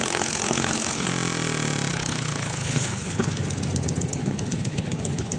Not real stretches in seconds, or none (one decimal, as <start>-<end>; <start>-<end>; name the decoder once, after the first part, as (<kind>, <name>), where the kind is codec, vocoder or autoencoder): 0.0-1.1 (codec, HILCodec); 1.9-3.4; 4.1-5.4